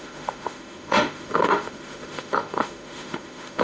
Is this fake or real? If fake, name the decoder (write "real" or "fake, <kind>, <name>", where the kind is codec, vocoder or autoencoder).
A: fake, autoencoder, DAC-VAE